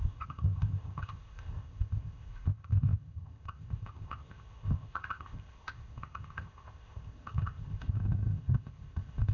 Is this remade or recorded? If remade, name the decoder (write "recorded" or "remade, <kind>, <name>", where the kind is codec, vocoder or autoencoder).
remade, codec, ZipCodec